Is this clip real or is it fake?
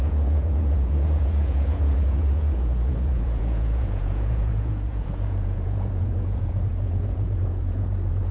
fake